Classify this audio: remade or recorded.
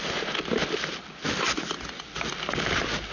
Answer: recorded